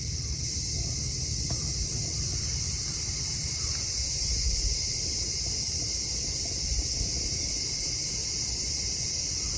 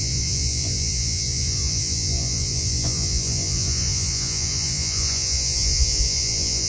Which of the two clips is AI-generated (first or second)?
second